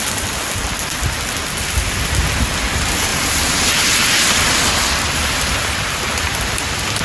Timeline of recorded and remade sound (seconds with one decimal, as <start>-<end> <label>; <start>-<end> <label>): 0.0-7.0 recorded